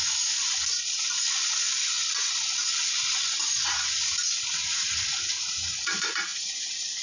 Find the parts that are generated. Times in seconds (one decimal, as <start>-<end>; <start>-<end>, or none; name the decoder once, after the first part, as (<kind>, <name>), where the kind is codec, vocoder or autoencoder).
0.0-0.4 (vocoder, Vocos); 4.5-7.0